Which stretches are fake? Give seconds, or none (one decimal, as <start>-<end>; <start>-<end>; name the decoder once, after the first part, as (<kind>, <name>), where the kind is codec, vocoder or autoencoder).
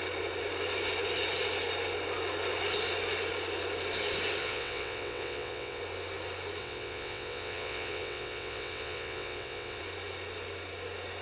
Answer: 4.4-5.8 (vocoder, WaveNeXt); 6.6-9.8